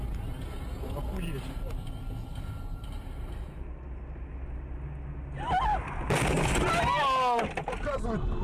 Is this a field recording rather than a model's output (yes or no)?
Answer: yes